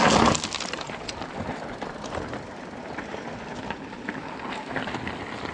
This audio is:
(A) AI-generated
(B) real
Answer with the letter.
B